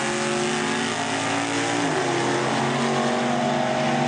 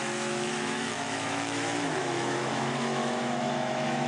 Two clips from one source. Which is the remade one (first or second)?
second